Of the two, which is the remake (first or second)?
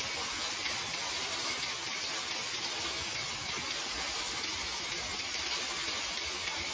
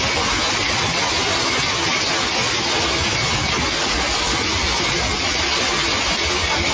first